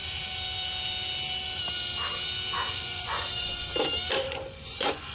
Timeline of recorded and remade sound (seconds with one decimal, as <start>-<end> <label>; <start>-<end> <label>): 0.0-2.7 recorded; 2.7-3.7 remade; 3.7-4.2 recorded; 4.2-5.1 remade